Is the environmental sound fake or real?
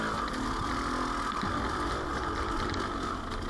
real